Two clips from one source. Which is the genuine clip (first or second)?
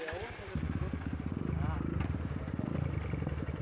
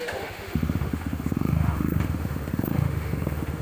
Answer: first